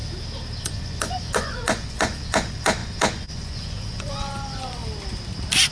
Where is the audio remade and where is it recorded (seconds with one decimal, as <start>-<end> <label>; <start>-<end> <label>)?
0.0-0.6 recorded; 0.6-4.8 remade; 4.8-5.7 recorded